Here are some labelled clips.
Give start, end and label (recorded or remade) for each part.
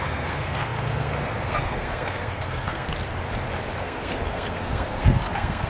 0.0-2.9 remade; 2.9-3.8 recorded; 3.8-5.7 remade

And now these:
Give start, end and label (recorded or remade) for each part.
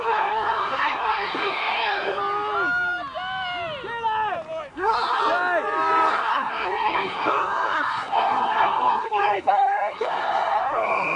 0.0-2.2 remade; 2.2-4.7 recorded; 4.7-5.2 remade; 5.2-6.1 recorded; 6.1-11.2 remade